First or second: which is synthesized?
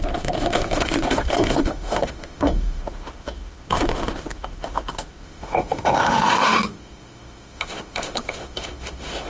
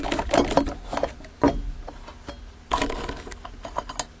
first